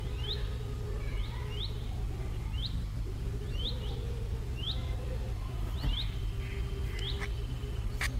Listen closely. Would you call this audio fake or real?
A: real